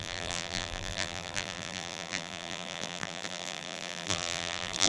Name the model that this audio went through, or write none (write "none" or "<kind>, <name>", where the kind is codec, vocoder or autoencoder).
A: vocoder, BigVGAN v2